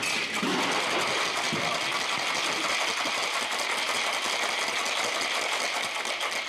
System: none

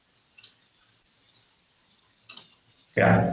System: none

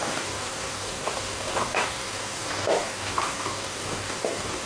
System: codec, DAC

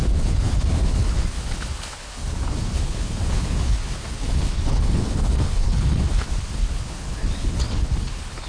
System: codec, HILCodec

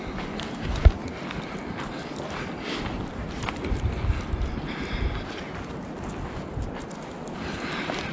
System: none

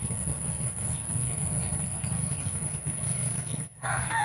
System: codec, SNAC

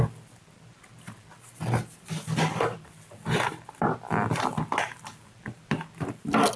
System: none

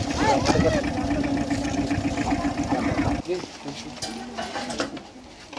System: none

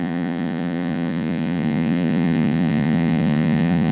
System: vocoder, Vocos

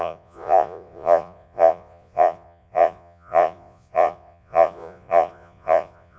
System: vocoder, Vocos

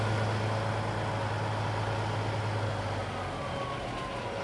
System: none